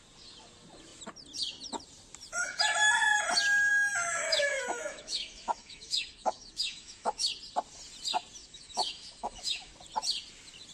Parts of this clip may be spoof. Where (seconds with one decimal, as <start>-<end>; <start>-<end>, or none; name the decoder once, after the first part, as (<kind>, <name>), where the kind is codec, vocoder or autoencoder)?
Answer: 3.7-7.3 (autoencoder, DAC-VAE); 8.4-9.7